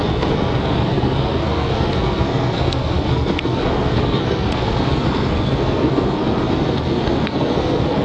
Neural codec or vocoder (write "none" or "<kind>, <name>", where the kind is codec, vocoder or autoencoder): codec, SNAC